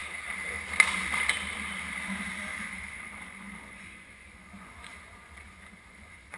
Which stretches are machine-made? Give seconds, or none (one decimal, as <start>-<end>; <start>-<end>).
2.5-6.4

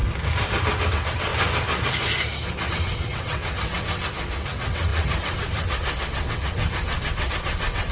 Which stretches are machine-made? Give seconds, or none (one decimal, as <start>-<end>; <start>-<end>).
0.9-1.3; 2.7-7.9

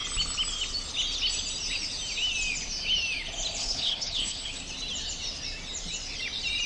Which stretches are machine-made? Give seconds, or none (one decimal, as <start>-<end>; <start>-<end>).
3.6-4.6

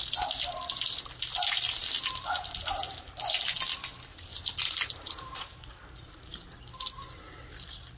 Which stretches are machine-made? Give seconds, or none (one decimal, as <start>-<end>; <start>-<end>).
4.3-6.1

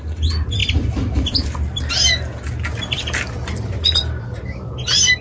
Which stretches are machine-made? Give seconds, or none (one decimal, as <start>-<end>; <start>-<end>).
0.6-1.9; 2.7-4.7

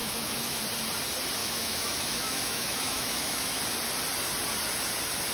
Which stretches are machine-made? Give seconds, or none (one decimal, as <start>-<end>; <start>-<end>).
0.0-0.6; 1.4-3.6

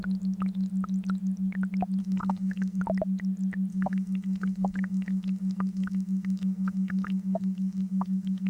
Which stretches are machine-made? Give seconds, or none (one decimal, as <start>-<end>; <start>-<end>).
2.0-2.8; 3.7-8.5